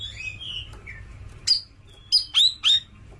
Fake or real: real